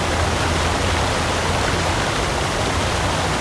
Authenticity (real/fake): real